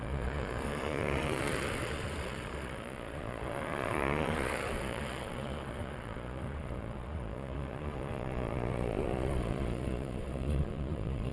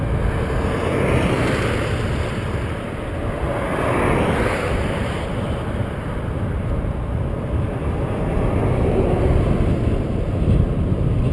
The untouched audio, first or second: second